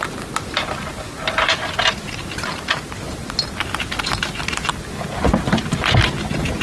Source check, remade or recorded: recorded